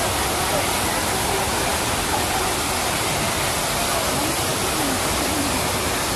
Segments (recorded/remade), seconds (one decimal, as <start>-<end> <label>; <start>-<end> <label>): 0.0-6.2 recorded